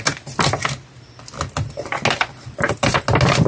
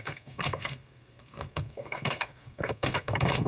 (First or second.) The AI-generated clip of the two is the second